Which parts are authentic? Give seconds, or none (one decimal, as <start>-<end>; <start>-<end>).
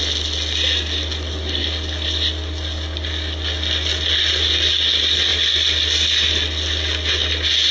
0.0-7.7